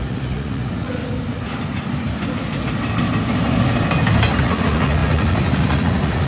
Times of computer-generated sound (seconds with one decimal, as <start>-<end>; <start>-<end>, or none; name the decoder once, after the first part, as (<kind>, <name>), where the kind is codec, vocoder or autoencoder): 0.0-1.0 (vocoder, Vocos); 4.4-6.3